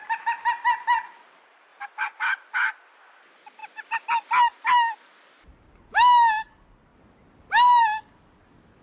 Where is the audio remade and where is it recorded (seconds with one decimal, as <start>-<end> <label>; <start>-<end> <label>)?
0.0-8.8 recorded